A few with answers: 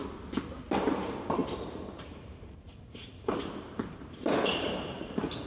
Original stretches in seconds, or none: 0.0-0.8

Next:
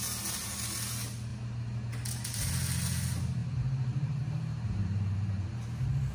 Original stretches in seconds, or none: 0.0-1.3; 2.5-3.4

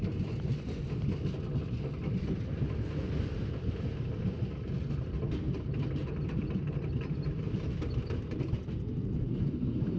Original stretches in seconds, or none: 0.0-3.4; 4.4-6.0

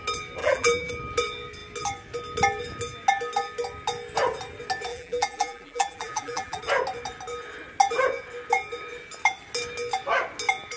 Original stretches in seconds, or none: 0.0-0.4; 0.9-4.9; 6.6-10.8

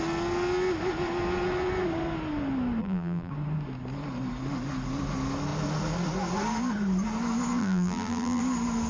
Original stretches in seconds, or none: 0.0-2.8; 3.3-7.6; 8.4-8.9